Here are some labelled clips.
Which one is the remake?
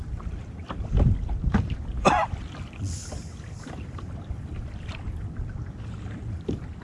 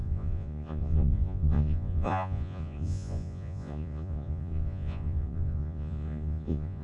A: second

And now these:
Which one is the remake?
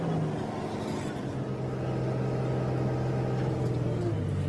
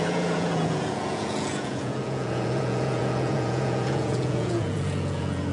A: second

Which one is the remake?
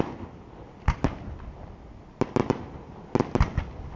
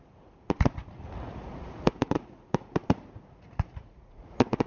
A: second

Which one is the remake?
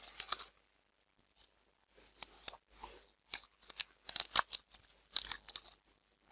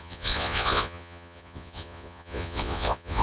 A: second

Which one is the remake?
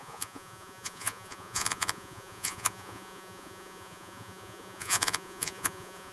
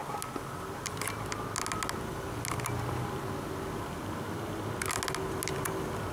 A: first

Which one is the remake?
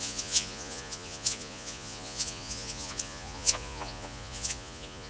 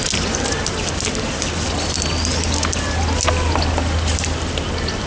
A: first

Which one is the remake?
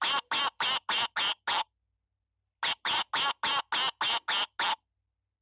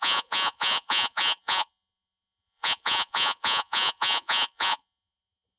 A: second